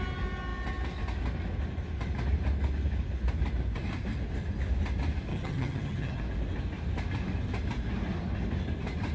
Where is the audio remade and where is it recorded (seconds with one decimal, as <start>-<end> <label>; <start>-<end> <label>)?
0.0-5.3 recorded; 5.3-6.2 remade; 6.2-9.1 recorded